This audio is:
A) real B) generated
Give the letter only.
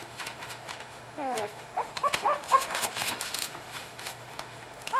B